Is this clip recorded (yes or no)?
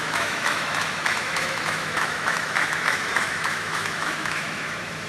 no